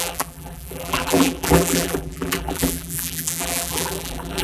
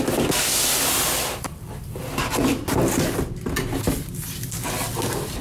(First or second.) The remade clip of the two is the first